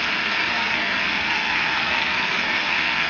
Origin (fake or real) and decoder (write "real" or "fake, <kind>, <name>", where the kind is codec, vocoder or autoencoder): fake, codec, SNAC